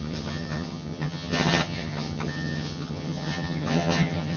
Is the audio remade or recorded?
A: remade